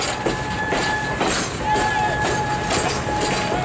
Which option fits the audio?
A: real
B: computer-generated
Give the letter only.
A